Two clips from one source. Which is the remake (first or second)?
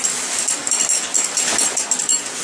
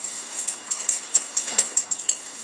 second